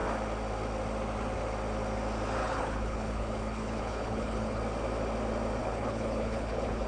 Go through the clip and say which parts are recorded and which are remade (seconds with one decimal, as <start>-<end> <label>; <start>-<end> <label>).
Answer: 0.0-2.4 recorded; 2.4-4.6 remade; 4.6-5.6 recorded; 5.6-6.9 remade